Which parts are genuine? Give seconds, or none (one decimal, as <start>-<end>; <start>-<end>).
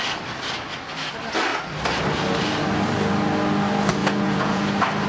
0.0-4.0; 4.6-5.1